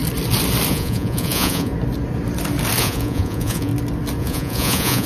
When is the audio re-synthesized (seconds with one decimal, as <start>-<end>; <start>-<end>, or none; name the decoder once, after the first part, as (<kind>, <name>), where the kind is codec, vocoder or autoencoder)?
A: 0.7-1.7 (vocoder, Vocos); 2.8-3.7; 4.2-5.1